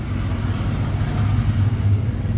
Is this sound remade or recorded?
recorded